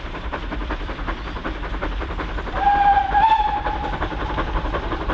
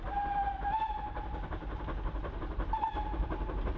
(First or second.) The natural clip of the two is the second